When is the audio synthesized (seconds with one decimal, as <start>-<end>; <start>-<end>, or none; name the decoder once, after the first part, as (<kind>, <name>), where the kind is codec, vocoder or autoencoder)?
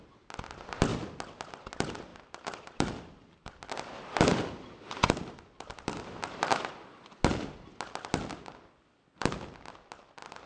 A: 2.1-6.7 (vocoder, BigVGAN v2)